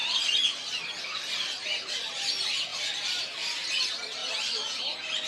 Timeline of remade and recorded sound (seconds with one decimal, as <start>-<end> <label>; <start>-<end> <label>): 0.0-5.3 recorded